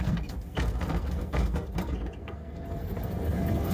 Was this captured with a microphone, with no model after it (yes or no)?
no